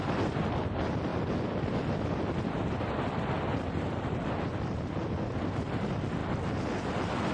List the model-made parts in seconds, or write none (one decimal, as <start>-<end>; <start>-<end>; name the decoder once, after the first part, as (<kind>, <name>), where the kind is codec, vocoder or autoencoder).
1.1-4.5 (vocoder, BigVGAN v2)